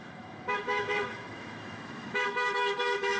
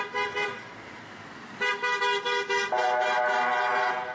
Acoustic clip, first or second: second